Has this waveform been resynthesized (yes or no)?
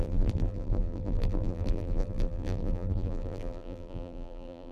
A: yes